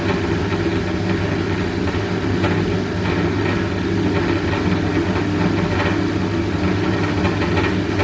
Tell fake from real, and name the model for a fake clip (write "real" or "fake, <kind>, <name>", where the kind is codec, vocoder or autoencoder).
real